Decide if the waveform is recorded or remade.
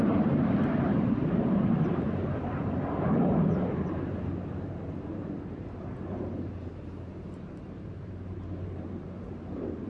remade